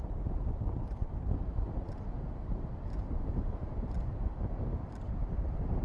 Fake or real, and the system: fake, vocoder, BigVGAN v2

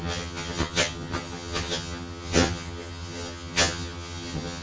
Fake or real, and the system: fake, vocoder, HiFi-GAN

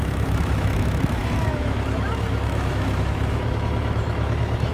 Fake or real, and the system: fake, autoencoder, DAC-VAE